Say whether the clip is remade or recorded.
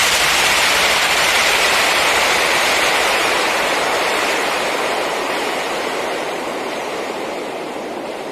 remade